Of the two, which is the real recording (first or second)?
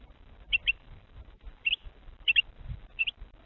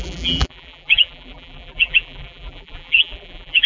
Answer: first